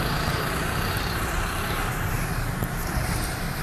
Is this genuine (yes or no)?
no